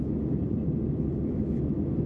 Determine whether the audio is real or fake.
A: real